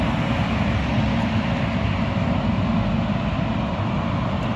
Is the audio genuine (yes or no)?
yes